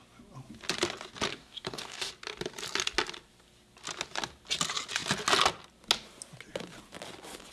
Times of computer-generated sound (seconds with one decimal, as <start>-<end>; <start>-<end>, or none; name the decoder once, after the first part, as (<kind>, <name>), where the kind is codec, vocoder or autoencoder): 1.3-2.1 (codec, DAC)